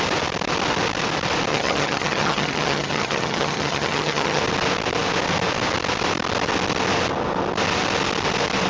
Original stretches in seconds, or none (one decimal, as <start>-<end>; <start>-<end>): 0.0-1.5; 4.4-8.7